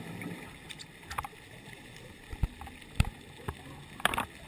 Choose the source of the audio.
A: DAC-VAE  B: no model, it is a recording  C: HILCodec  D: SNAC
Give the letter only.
B